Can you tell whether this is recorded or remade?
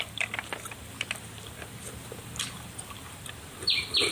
remade